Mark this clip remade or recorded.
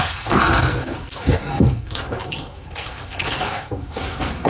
remade